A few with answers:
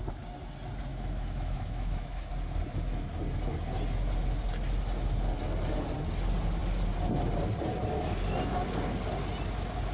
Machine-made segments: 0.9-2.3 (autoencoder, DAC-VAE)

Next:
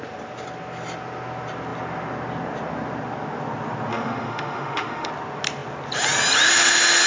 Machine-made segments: 3.9-5.1 (autoencoder, DAC-VAE)